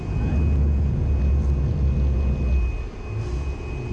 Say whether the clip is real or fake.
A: real